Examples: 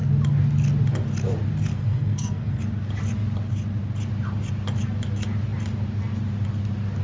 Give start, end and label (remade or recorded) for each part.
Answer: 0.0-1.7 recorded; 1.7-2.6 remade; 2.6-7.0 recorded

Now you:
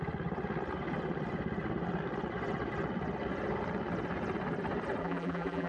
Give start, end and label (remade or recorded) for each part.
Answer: 0.0-5.0 recorded; 5.0-5.7 remade